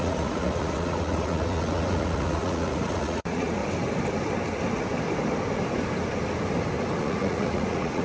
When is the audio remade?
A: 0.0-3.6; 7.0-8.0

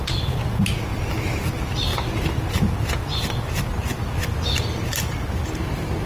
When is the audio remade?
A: none